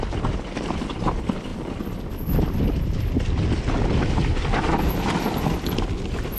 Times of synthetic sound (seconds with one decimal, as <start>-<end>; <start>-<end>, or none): none